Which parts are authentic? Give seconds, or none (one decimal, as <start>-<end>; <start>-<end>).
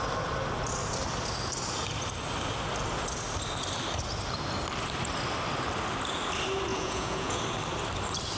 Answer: 0.0-6.7; 7.4-8.4